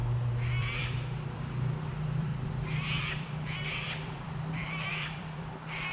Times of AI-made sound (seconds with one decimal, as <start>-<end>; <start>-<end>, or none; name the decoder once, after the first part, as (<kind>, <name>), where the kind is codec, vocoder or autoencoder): 0.6-2.3 (vocoder, BigVGAN v2); 3.0-5.9